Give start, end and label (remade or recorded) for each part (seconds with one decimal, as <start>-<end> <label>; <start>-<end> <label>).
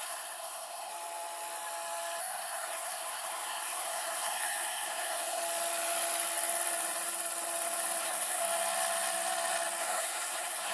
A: 0.0-0.9 remade; 0.9-2.2 recorded; 2.2-5.4 remade; 5.4-8.0 recorded; 8.0-8.4 remade; 8.4-9.8 recorded; 9.8-10.7 remade